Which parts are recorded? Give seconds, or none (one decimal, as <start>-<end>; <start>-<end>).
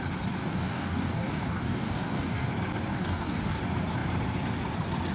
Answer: 0.0-0.4; 2.5-2.9; 3.6-5.1